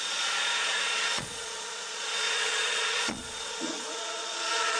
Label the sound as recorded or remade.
remade